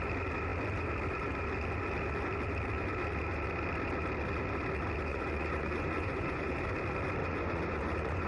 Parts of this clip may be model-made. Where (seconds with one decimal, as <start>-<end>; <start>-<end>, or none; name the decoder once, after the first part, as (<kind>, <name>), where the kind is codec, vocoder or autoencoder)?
5.1-6.5 (vocoder, Vocos); 7.2-8.3